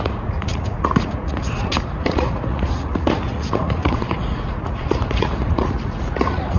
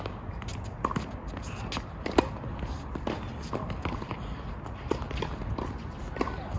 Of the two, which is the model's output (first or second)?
first